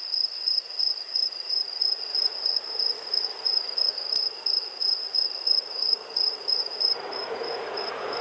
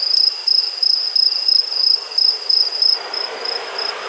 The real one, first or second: second